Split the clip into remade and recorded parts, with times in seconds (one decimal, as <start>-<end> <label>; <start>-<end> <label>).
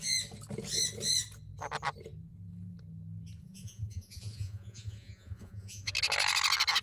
0.0-3.4 recorded; 3.4-5.9 remade; 5.9-6.8 recorded